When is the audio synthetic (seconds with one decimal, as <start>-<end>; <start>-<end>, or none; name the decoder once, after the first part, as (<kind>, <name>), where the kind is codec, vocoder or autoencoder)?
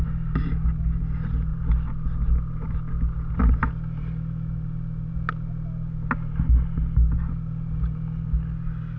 none